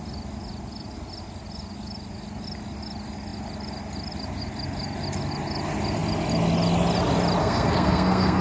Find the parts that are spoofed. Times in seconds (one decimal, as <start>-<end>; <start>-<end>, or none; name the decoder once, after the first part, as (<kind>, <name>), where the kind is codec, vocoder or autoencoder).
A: 7.4-8.4 (codec, SNAC)